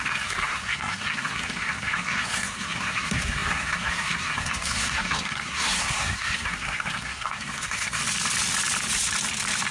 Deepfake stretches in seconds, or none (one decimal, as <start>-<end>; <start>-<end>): 0.0-8.0

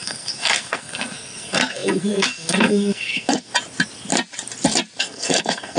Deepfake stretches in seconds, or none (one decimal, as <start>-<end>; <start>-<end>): 0.0-3.5; 5.0-5.8

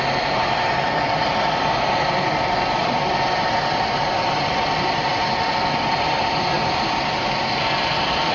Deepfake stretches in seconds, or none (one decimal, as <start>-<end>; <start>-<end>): none

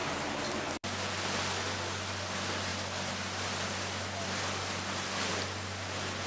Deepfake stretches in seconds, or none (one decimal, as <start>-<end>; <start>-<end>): none

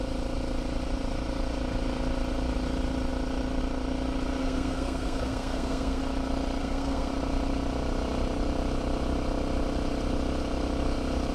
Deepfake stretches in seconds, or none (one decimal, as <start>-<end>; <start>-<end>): 4.4-6.0; 6.6-7.1

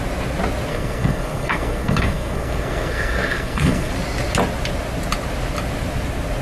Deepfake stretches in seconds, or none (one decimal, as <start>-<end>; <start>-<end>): 0.7-3.9

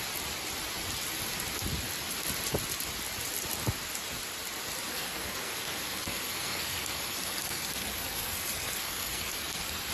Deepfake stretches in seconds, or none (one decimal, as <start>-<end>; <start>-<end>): 4.9-9.9

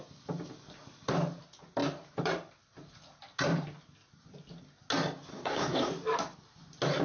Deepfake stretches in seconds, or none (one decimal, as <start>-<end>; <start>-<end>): 5.3-5.9